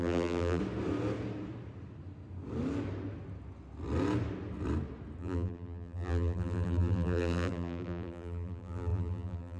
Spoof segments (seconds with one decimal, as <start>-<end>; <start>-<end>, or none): 0.0-0.6; 5.2-9.6